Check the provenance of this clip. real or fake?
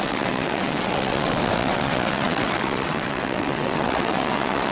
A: fake